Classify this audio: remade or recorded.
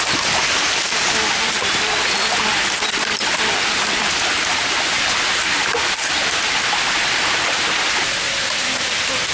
recorded